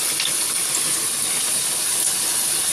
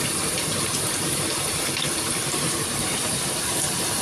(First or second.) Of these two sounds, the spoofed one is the second